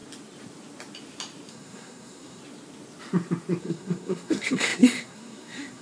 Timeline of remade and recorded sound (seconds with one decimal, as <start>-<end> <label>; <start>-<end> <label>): 0.0-1.5 recorded; 1.5-2.4 remade; 2.4-3.6 recorded; 3.6-5.8 remade